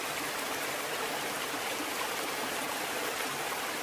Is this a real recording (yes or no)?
yes